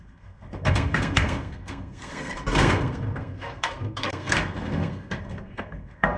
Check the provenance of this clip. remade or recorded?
remade